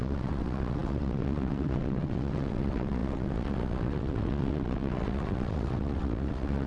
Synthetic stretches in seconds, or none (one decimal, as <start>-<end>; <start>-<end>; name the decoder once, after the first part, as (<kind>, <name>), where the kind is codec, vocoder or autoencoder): 0.0-6.7 (vocoder, WaveNeXt)